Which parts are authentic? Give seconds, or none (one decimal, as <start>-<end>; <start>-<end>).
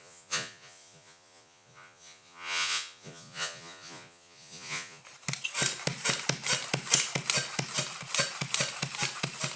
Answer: 5.0-9.6